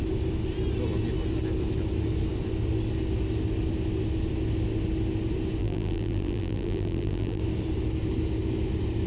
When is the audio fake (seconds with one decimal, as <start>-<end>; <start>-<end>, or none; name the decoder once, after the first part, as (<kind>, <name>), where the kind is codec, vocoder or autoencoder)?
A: 5.6-7.4 (vocoder, BigVGAN v2)